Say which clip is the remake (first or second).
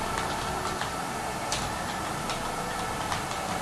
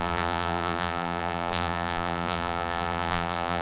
second